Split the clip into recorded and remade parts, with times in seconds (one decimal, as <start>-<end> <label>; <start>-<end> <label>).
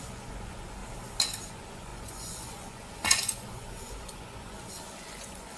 0.0-0.8 remade; 0.8-1.5 recorded; 1.5-5.6 remade